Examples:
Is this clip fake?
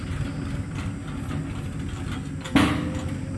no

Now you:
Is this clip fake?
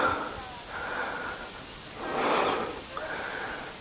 no